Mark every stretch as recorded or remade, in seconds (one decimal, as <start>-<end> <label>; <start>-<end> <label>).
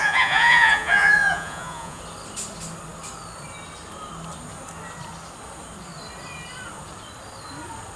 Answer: 0.0-2.0 remade; 2.0-8.0 recorded